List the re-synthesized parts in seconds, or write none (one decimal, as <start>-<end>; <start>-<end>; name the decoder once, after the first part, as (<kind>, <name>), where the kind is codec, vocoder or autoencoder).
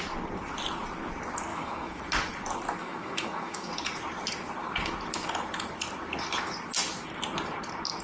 1.5-2.0 (autoencoder, DAC-VAE); 2.8-3.7